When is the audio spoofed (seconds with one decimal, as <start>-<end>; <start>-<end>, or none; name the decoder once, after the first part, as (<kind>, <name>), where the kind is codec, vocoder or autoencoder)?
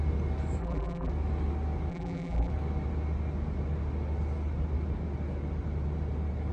0.6-1.1 (vocoder, BigVGAN v2); 1.9-2.5